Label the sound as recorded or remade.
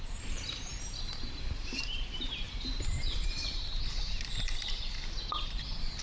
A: remade